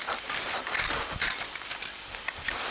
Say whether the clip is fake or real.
real